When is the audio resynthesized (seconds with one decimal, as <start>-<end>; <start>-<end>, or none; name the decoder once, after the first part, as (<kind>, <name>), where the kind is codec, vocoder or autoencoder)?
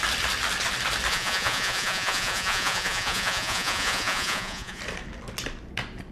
1.1-4.8 (vocoder, Vocos)